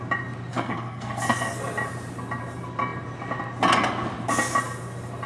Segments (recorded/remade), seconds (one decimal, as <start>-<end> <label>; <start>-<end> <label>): 0.0-0.5 recorded; 0.5-1.6 remade; 1.6-5.3 recorded